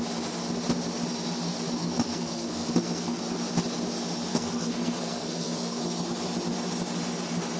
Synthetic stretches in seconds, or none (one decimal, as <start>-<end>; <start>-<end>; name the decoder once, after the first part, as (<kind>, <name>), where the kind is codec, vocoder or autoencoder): 1.8-3.2 (codec, SNAC); 4.3-5.8